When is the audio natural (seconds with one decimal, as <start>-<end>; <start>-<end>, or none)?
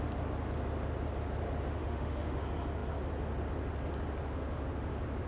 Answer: 0.0-1.8; 2.4-5.3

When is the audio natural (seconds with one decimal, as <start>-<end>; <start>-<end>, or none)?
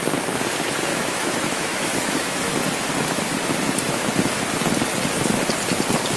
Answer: 0.0-0.9; 2.5-3.6; 4.1-6.2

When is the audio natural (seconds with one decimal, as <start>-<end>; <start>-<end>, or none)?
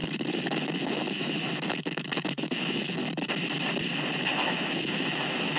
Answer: 3.0-4.2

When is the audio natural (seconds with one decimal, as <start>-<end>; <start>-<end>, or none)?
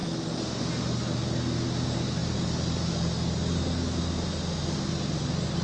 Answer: 0.0-5.6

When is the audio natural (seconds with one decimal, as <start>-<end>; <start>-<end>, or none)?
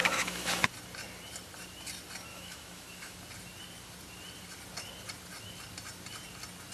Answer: 0.7-2.3; 3.2-6.7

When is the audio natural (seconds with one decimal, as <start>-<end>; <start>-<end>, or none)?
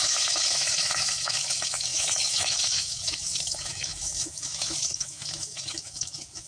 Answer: none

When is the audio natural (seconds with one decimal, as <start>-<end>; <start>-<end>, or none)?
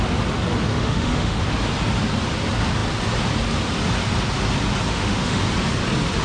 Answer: 0.0-0.7; 1.4-4.9; 5.4-6.2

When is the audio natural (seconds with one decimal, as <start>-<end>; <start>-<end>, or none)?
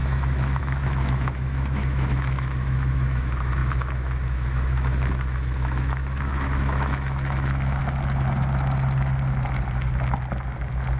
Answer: 7.8-11.0